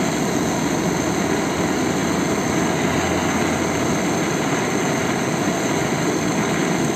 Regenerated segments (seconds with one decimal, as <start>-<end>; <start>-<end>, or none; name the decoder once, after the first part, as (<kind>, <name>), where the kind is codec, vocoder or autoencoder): none